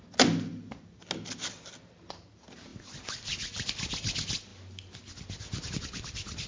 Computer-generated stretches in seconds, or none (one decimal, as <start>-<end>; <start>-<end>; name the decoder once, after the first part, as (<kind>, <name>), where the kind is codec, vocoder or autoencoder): none